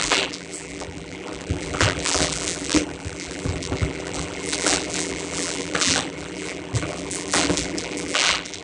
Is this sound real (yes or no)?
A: no